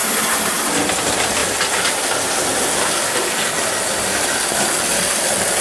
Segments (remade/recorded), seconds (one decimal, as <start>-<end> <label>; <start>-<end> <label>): 0.0-5.6 recorded